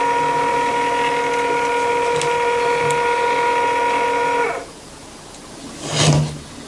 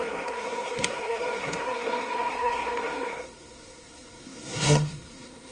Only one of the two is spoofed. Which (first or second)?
second